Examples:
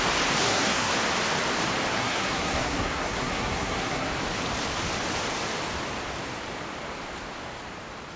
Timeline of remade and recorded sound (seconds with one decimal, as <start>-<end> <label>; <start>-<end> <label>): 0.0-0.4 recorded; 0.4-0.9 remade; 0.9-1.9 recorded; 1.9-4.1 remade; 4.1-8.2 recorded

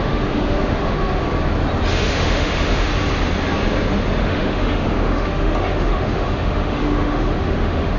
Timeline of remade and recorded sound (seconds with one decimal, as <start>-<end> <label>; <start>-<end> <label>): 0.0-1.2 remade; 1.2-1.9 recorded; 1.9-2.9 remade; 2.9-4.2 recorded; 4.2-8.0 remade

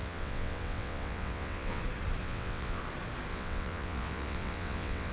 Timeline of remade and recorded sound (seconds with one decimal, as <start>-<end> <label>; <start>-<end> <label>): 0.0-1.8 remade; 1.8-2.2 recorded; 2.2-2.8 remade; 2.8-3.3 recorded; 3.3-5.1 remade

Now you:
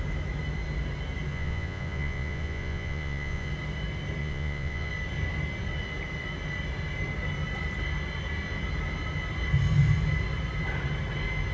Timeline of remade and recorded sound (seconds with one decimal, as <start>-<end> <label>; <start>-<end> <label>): 0.0-1.3 recorded; 1.3-3.5 remade; 3.5-4.2 recorded; 4.2-4.9 remade; 4.9-11.5 recorded

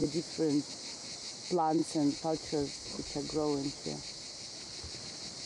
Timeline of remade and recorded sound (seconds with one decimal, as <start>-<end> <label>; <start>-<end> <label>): 0.0-5.5 recorded

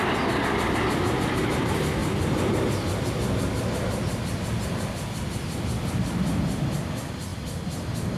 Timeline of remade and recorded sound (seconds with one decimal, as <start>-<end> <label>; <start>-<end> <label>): 0.0-8.2 recorded